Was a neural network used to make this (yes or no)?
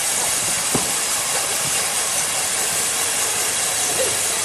no